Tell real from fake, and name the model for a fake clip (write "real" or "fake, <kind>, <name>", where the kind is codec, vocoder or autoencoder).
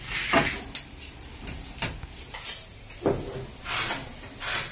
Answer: real